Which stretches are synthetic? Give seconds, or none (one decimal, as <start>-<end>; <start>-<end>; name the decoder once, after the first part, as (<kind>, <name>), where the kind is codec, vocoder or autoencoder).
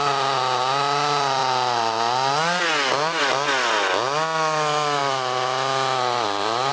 none